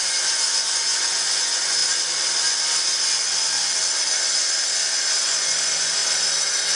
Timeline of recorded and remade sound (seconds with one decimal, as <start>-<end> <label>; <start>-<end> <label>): 0.0-1.8 remade; 1.8-5.1 recorded; 5.1-6.0 remade; 6.0-6.8 recorded